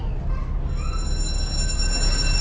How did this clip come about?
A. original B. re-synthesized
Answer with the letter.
A